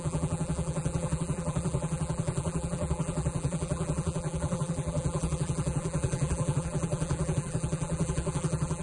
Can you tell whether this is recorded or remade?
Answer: remade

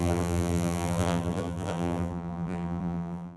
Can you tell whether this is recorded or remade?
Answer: remade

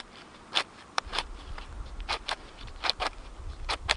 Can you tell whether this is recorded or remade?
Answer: remade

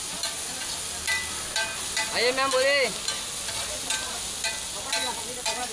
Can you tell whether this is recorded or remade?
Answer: recorded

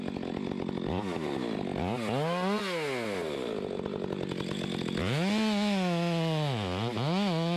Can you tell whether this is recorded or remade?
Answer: recorded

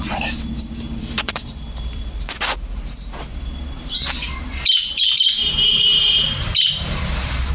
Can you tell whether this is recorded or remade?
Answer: remade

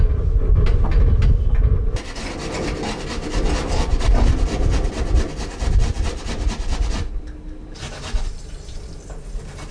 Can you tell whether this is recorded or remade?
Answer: recorded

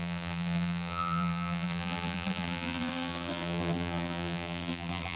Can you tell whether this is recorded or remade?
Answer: remade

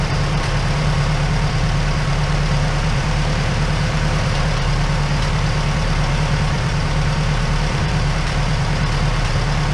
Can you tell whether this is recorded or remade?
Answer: remade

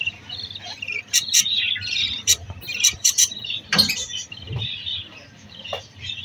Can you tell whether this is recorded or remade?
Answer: remade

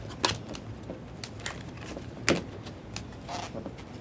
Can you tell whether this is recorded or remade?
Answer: recorded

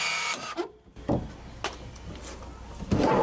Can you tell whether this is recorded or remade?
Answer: recorded